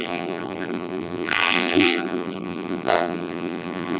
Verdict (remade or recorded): remade